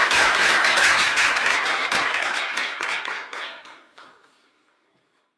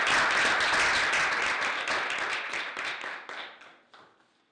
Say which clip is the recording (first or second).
second